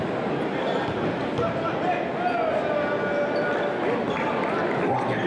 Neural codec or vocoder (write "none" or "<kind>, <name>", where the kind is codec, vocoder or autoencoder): none